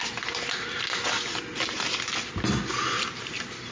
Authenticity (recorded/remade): recorded